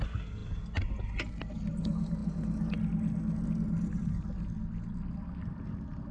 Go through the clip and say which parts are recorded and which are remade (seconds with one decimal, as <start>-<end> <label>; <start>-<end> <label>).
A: 0.0-6.1 recorded